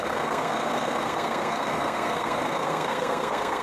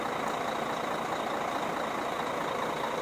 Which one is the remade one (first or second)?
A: first